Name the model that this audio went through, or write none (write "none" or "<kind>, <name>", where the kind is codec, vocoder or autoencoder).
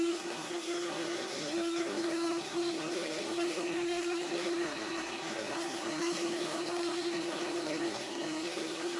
codec, SNAC